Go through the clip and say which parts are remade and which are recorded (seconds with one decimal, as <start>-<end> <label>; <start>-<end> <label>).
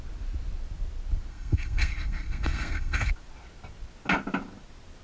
0.0-1.3 recorded; 1.3-3.1 remade; 3.1-5.0 recorded